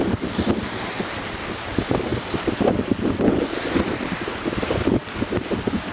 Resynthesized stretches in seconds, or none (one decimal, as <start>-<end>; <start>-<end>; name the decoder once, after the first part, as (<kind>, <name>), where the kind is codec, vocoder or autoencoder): none